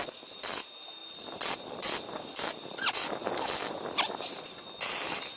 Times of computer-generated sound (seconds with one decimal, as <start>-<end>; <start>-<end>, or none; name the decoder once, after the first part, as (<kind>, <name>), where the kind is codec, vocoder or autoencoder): none